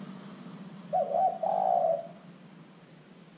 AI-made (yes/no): no